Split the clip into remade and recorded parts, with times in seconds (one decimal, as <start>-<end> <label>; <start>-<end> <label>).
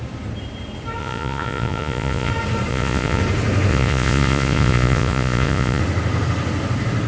0.0-1.0 recorded; 1.0-2.3 remade; 2.3-2.7 recorded; 2.7-3.2 remade; 3.2-3.7 recorded; 3.7-5.8 remade; 5.8-7.1 recorded